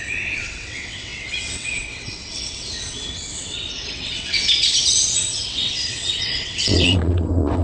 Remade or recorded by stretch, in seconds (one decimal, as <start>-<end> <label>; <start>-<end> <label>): 0.0-7.6 remade